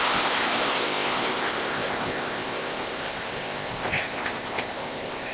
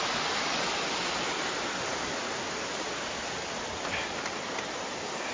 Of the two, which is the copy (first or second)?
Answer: first